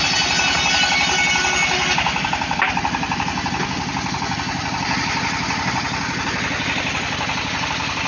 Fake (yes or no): no